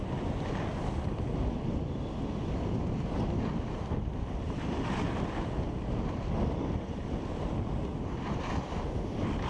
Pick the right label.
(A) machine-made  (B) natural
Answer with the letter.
B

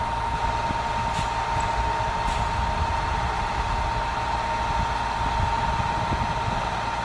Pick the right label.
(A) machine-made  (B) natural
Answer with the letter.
B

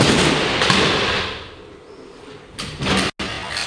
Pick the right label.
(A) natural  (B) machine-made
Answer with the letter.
A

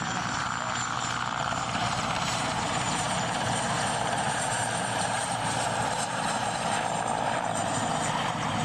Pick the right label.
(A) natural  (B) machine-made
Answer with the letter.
B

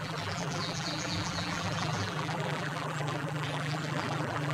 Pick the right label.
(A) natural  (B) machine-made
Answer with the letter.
B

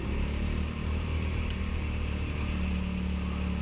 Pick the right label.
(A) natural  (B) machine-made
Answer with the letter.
A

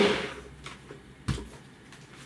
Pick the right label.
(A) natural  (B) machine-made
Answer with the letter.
A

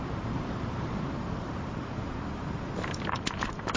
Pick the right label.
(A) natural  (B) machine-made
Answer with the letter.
B